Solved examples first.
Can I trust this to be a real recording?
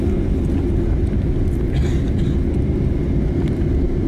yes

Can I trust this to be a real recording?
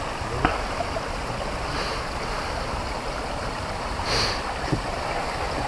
yes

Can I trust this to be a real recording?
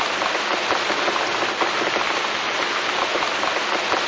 yes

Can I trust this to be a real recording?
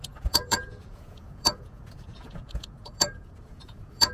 no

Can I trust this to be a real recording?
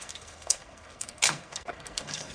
no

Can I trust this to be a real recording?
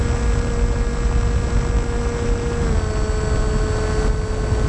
yes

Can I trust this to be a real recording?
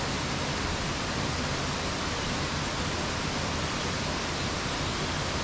yes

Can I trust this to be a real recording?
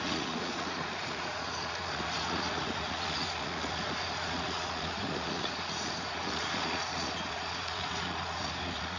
no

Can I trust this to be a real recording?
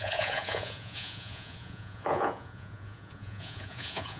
no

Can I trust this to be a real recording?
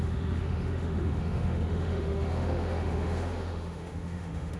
no